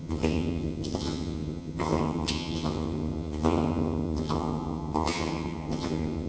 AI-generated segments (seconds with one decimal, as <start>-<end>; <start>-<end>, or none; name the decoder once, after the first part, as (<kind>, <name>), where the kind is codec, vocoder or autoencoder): 0.0-6.3 (vocoder, HiFi-GAN)